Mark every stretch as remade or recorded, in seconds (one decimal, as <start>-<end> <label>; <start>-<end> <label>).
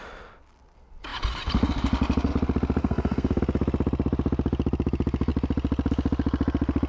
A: 0.0-2.8 recorded; 2.8-3.4 remade; 3.4-6.9 recorded